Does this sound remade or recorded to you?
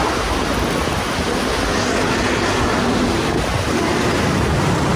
recorded